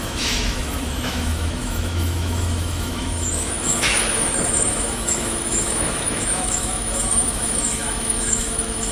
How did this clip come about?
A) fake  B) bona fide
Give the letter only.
A